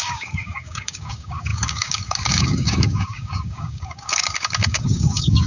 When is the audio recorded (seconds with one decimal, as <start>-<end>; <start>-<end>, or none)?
none